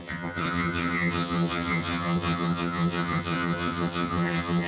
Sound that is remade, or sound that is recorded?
remade